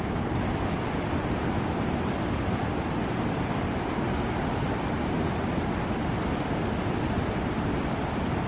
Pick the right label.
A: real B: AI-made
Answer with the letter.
A